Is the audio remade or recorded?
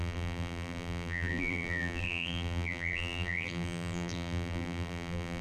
remade